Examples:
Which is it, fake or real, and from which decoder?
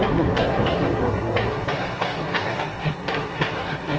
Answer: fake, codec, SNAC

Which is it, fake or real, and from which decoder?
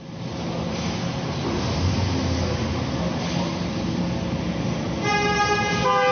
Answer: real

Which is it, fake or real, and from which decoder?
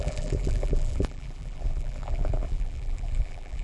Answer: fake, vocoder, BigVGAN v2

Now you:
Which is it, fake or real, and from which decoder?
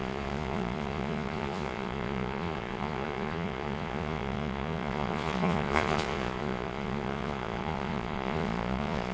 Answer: fake, vocoder, Vocos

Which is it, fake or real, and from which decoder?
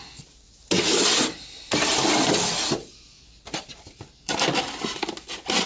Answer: real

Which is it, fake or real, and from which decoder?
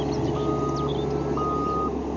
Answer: real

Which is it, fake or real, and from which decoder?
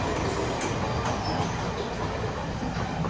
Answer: real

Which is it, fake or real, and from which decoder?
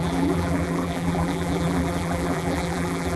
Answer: fake, vocoder, BigVGAN v2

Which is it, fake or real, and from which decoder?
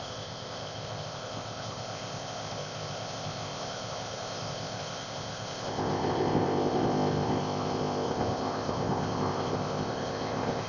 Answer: fake, codec, ZipCodec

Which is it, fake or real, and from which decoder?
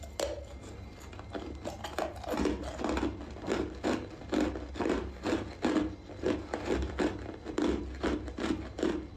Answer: real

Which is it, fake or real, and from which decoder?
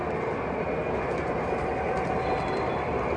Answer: real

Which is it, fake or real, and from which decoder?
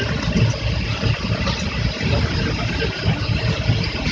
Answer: real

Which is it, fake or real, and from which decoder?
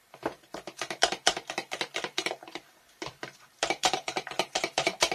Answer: fake, vocoder, BigVGAN v2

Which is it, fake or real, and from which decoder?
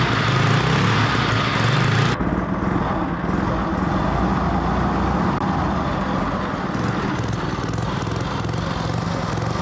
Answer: real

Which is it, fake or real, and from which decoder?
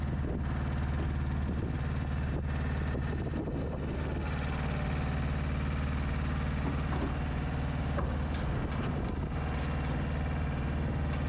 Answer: real